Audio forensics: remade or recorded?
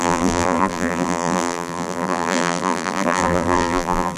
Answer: remade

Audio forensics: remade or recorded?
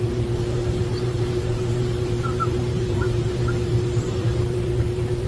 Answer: remade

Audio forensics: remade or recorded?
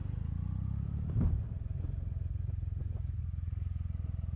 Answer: recorded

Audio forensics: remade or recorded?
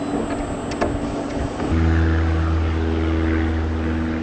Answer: recorded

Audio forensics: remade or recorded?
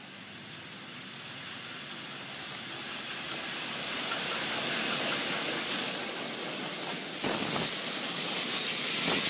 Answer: recorded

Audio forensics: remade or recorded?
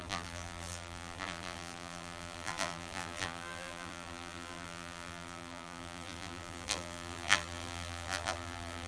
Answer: remade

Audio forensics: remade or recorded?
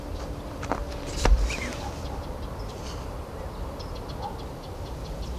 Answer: recorded